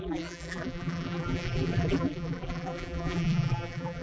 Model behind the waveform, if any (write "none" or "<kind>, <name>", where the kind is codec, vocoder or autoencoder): vocoder, BigVGAN v2